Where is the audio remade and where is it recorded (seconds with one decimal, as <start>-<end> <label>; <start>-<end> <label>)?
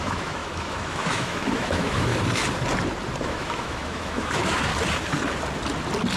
0.0-2.1 remade; 2.1-3.2 recorded; 3.2-4.7 remade; 4.7-6.2 recorded